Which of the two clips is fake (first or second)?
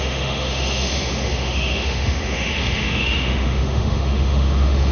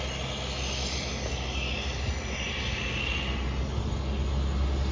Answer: first